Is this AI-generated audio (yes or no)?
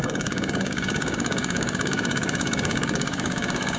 yes